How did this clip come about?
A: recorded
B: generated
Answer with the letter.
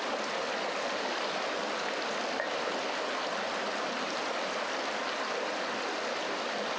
A